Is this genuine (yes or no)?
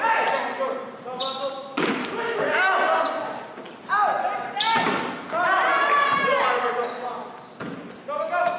yes